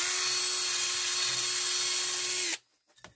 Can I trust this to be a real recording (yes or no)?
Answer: yes